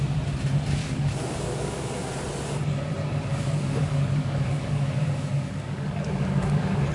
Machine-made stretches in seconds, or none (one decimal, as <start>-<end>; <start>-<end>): 0.8-1.9; 3.3-6.9